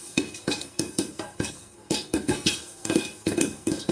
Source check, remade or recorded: remade